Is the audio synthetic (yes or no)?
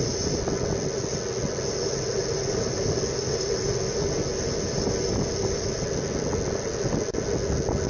no